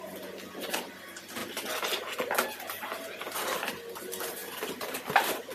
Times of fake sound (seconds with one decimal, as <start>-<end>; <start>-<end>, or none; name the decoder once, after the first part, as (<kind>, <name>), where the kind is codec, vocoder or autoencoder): none